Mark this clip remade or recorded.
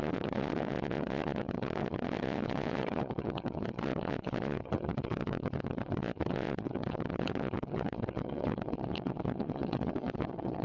remade